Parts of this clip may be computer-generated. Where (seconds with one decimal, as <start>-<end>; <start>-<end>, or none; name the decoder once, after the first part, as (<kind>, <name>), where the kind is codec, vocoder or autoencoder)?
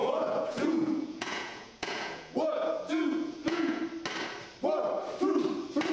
0.0-3.8 (vocoder, Vocos)